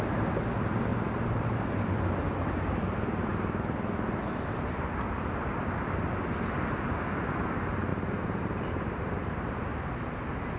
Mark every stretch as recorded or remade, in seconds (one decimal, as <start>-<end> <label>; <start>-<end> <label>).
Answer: 0.0-0.9 recorded; 0.9-2.0 remade; 2.0-7.9 recorded; 7.9-9.7 remade; 9.7-10.6 recorded